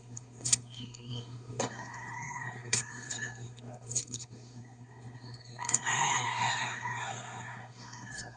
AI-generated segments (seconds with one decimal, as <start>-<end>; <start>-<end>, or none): 0.0-8.4